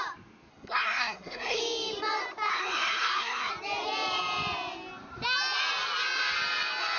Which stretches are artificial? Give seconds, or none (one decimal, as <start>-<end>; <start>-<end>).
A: 0.5-1.6; 2.5-3.5